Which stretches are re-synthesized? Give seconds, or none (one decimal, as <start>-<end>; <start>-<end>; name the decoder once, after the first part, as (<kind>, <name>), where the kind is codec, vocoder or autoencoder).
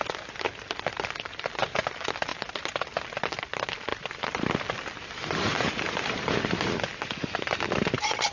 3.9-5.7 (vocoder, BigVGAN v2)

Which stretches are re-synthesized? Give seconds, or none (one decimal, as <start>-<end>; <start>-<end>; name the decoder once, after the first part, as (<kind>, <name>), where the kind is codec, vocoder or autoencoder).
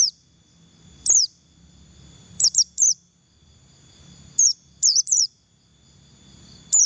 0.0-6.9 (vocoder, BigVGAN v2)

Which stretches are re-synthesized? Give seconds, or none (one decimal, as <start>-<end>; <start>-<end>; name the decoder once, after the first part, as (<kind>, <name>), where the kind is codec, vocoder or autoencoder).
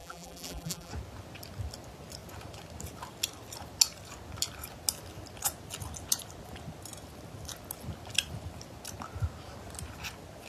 0.0-0.9 (vocoder, BigVGAN v2)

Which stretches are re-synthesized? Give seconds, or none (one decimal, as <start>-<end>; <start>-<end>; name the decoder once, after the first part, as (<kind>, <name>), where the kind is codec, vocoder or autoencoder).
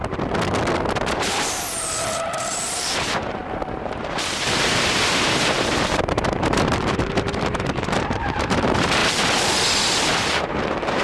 1.1-9.0 (vocoder, BigVGAN v2); 10.1-11.0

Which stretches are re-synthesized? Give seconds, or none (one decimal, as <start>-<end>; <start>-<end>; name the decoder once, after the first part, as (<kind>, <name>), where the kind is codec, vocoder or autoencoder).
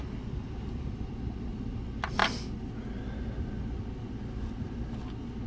0.0-2.2 (vocoder, BigVGAN v2)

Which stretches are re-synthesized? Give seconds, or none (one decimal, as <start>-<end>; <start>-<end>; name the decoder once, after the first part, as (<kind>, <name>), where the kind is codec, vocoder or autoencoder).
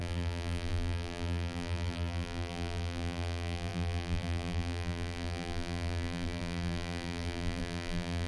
0.0-8.3 (vocoder, BigVGAN v2)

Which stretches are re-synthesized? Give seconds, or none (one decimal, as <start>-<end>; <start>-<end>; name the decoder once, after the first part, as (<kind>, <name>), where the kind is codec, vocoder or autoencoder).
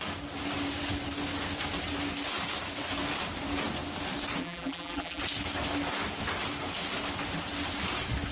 4.4-5.2 (vocoder, BigVGAN v2)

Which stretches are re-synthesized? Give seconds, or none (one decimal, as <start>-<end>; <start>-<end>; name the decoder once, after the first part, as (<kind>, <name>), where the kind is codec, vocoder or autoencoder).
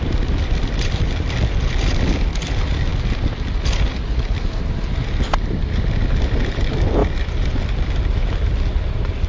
0.0-2.9 (vocoder, BigVGAN v2); 4.9-7.0; 8.3-9.3